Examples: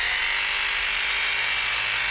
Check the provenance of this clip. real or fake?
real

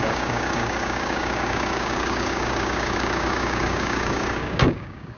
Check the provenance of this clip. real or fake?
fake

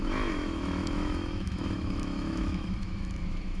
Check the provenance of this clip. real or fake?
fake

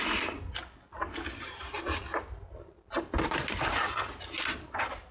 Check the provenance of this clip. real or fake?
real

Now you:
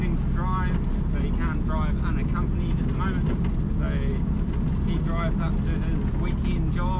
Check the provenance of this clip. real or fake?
real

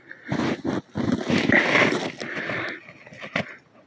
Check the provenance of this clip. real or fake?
real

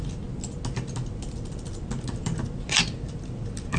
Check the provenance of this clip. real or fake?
real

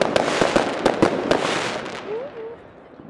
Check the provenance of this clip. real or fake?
real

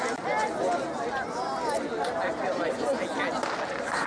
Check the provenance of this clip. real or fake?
real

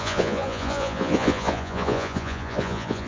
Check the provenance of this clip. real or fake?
fake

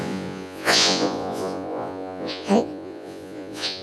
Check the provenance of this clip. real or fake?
fake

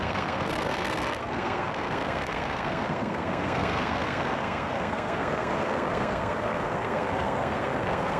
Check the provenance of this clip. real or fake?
fake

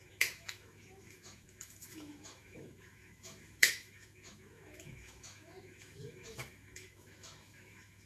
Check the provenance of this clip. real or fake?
fake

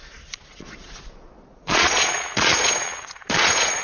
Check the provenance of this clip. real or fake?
fake